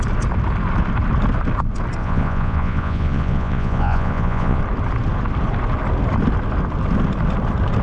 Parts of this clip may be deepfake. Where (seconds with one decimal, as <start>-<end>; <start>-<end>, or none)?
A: 2.0-4.6